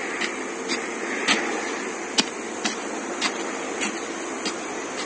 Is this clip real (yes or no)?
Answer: yes